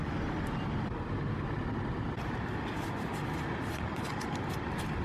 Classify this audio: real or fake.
real